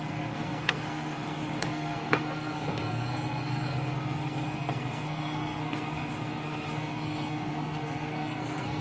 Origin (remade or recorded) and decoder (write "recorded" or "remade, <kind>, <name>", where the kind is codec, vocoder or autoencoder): remade, codec, SNAC